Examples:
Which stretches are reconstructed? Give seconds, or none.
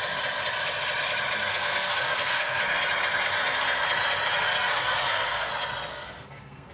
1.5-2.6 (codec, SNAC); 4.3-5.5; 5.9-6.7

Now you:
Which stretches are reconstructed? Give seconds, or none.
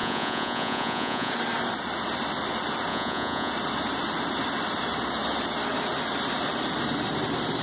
0.0-1.3 (vocoder, Vocos); 2.9-3.5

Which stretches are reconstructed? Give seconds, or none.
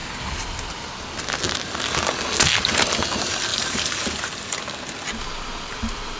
3.5-4.6 (vocoder, BigVGAN v2)